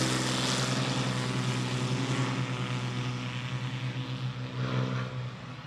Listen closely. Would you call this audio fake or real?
real